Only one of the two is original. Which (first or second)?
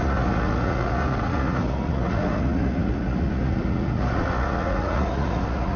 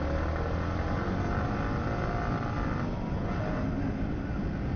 second